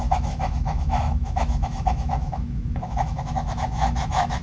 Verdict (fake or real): fake